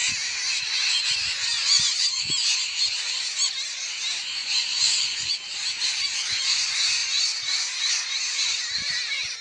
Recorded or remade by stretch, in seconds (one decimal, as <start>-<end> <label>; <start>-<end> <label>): 0.0-4.4 recorded; 4.4-5.3 remade; 5.3-9.4 recorded